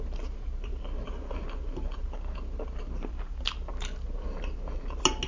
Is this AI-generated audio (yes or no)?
no